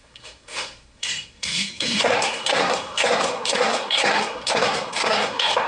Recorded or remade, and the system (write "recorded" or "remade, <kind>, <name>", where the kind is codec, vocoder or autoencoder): remade, codec, SNAC